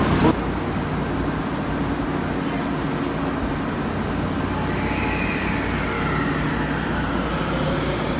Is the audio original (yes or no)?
yes